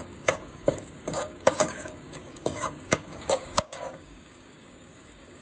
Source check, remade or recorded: remade